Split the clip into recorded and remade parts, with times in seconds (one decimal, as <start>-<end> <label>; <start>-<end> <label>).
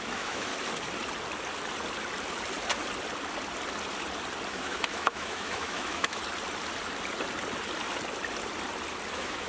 0.0-0.5 remade; 0.5-4.5 recorded; 4.5-6.2 remade; 6.2-9.1 recorded; 9.1-9.5 remade